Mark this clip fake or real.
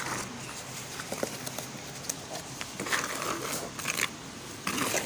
real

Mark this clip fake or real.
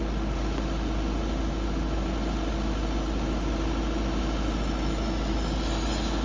real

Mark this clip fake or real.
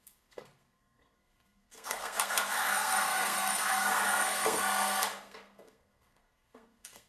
fake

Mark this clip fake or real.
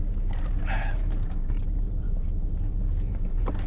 fake